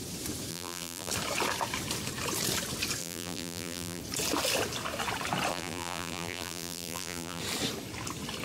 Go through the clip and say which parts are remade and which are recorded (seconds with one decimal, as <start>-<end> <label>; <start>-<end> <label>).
0.0-0.5 recorded; 0.5-1.1 remade; 1.1-3.0 recorded; 3.0-4.0 remade; 4.0-5.5 recorded; 5.5-7.4 remade; 7.4-8.4 recorded